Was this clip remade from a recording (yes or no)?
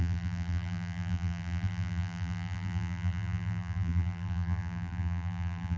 yes